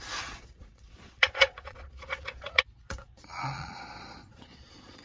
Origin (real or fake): fake